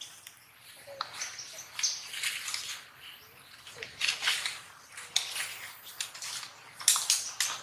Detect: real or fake real